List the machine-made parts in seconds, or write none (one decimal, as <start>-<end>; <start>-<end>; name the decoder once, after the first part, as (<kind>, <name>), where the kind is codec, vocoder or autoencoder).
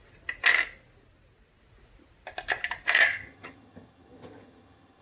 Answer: 3.0-5.0 (vocoder, HiFi-GAN)